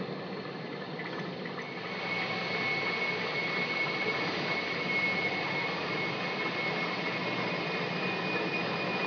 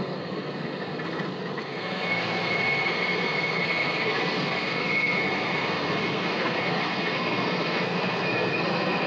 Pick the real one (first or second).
first